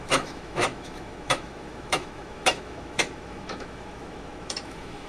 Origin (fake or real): fake